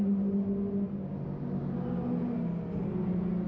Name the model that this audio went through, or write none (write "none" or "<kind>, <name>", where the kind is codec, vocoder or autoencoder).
none